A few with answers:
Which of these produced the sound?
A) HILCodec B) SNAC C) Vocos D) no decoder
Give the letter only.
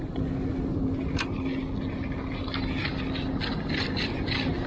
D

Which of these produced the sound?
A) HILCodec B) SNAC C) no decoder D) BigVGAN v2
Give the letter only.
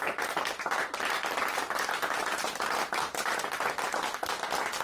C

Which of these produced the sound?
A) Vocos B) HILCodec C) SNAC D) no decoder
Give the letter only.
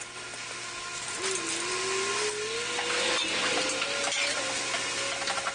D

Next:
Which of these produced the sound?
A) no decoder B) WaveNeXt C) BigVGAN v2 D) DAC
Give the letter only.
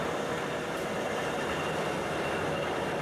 A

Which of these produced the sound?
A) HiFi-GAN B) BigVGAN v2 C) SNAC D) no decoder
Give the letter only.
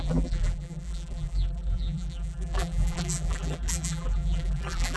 B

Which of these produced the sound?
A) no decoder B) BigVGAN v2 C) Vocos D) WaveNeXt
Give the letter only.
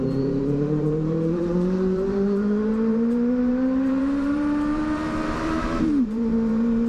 B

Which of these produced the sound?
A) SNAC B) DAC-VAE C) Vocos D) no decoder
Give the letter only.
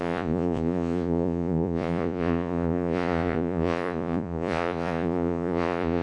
C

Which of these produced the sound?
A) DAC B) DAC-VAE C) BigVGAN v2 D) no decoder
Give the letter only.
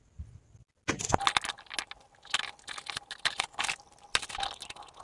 D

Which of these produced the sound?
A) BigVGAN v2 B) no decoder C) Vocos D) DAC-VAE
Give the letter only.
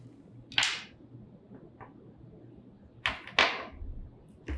B